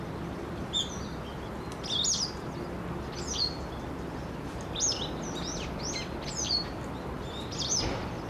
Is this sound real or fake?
real